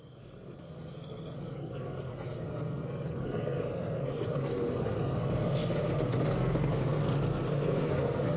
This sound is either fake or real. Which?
fake